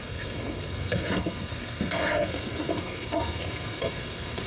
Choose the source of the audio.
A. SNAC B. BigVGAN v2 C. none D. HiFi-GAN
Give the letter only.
A